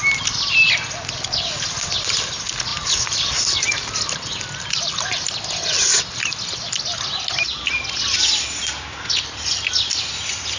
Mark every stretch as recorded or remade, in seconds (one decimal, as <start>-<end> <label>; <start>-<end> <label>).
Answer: 0.0-10.6 recorded